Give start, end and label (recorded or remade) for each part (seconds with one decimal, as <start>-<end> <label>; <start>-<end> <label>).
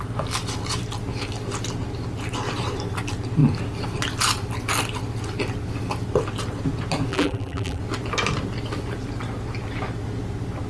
0.0-7.1 recorded; 7.1-7.8 remade; 7.8-10.7 recorded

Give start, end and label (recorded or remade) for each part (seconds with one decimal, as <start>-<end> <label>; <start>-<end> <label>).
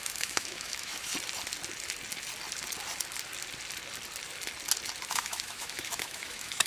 0.0-1.1 remade; 1.1-5.1 recorded; 5.1-6.7 remade